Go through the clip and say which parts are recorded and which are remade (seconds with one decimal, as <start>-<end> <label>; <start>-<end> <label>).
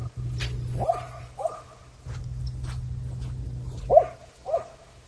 0.0-1.2 recorded; 1.2-1.8 remade; 1.8-4.2 recorded; 4.2-5.1 remade